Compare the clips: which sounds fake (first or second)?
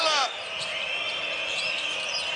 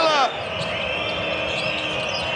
first